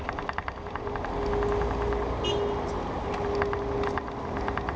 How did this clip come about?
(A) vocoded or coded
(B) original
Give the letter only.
B